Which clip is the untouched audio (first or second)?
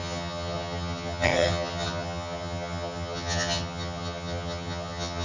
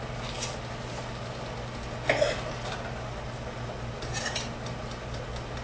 second